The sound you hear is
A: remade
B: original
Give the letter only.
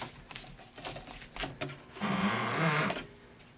B